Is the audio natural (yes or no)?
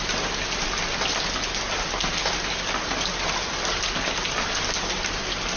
yes